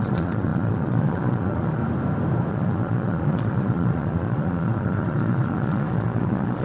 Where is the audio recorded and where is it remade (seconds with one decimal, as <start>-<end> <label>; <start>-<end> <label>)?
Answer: 0.0-1.8 remade; 1.8-2.5 recorded; 2.5-6.6 remade